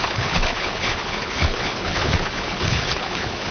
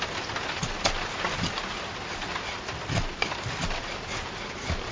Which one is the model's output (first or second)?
first